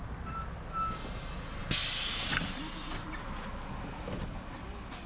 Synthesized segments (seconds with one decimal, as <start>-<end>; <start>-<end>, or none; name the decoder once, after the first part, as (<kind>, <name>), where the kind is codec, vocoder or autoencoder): none